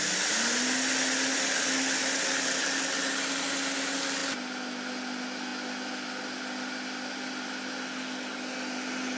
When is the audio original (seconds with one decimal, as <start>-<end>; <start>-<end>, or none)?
0.0-9.2